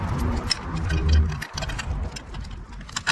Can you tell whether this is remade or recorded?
recorded